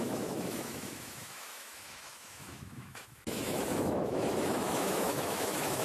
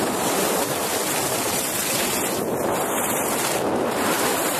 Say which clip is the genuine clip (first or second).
second